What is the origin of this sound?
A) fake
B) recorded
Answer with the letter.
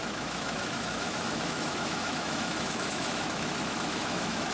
A